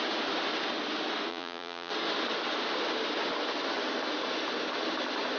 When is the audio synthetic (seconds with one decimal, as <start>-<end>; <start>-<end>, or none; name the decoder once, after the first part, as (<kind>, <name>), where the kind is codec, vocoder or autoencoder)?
1.3-1.9 (vocoder, Vocos)